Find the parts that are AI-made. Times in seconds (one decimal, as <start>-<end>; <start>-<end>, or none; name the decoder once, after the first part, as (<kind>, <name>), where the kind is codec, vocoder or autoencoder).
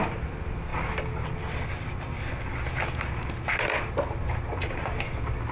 none